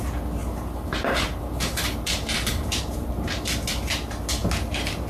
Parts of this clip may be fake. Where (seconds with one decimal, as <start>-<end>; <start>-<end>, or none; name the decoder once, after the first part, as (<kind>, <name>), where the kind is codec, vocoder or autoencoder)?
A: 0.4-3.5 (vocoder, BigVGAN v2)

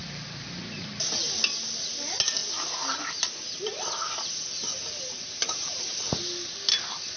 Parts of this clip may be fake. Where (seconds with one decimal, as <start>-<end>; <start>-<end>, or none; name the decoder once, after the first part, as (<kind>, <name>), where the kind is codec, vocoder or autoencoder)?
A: none

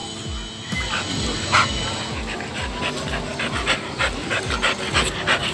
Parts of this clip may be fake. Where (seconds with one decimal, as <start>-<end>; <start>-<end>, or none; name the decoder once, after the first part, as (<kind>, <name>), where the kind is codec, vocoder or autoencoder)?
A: 3.3-4.5 (vocoder, BigVGAN v2)

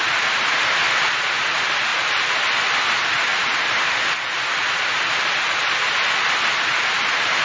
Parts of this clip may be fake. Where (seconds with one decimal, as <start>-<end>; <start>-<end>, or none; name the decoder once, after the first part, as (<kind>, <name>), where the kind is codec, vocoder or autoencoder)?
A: 1.9-2.7 (vocoder, BigVGAN v2); 3.3-3.9